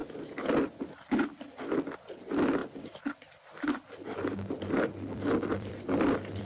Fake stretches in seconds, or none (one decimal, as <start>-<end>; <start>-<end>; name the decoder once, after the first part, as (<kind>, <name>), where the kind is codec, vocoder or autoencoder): 2.6-6.4 (vocoder, BigVGAN v2)